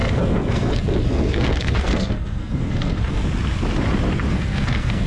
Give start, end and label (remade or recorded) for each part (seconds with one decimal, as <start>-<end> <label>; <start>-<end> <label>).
0.0-3.2 remade; 3.2-4.3 recorded; 4.3-5.1 remade

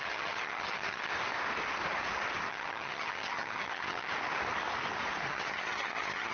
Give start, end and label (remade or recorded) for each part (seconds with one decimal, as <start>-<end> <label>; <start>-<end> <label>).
0.0-1.1 remade; 1.1-2.5 recorded; 2.5-4.1 remade; 4.1-5.3 recorded; 5.3-6.3 remade

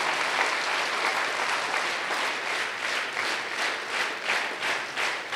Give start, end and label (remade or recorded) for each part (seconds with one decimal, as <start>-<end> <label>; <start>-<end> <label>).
0.0-5.4 recorded

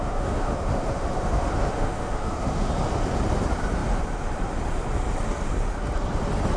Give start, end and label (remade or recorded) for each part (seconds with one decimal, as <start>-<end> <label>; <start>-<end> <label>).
0.0-2.7 remade; 2.7-6.6 recorded

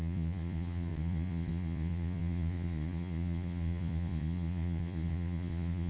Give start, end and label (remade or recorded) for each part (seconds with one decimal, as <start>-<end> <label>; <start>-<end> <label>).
0.0-5.9 remade

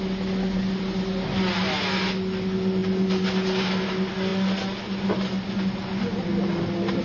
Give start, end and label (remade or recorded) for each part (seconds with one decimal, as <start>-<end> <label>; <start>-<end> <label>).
0.0-7.0 recorded